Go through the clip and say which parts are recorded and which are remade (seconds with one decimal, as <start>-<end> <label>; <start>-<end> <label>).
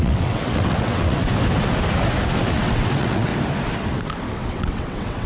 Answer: 0.0-1.3 remade; 1.3-2.4 recorded; 2.4-3.3 remade; 3.3-4.3 recorded; 4.3-5.3 remade